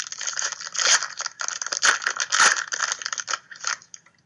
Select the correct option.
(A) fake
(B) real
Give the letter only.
B